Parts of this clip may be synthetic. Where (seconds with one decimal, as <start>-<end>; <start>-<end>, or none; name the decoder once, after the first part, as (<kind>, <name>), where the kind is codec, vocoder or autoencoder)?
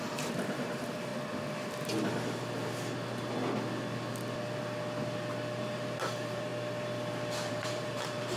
0.0-1.1 (vocoder, BigVGAN v2); 5.6-6.5; 7.5-8.4